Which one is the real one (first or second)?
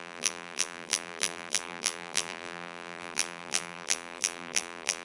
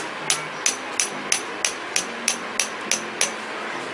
second